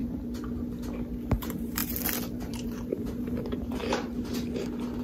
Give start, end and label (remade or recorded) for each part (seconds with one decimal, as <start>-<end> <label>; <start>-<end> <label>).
0.0-1.3 recorded; 1.3-1.8 remade; 1.8-2.4 recorded; 2.4-3.8 remade; 3.8-5.0 recorded